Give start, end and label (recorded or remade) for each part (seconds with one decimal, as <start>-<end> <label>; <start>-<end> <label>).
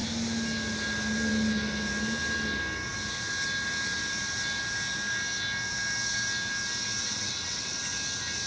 0.0-7.0 recorded; 7.0-7.8 remade; 7.8-8.5 recorded